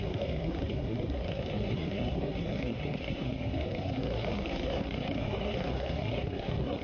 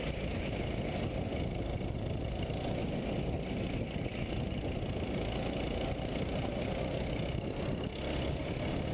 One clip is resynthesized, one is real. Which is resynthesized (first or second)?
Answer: first